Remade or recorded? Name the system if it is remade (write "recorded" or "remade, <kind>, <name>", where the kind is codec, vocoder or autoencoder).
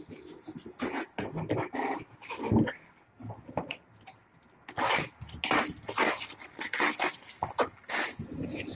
recorded